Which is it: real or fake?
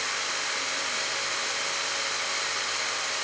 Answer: real